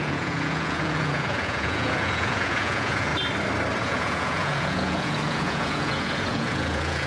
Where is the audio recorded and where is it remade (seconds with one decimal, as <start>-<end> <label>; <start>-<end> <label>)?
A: 0.0-3.1 remade; 3.1-3.8 recorded; 3.8-7.1 remade